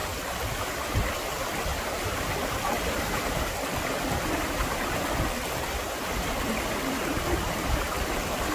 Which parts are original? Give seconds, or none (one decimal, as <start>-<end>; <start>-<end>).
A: 0.0-0.7